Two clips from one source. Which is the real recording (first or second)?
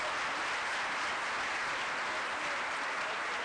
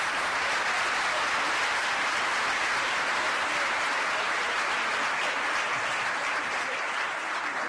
first